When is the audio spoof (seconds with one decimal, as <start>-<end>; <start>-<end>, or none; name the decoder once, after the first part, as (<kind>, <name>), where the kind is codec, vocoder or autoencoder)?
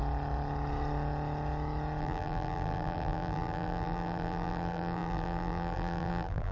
2.0-6.5 (vocoder, BigVGAN v2)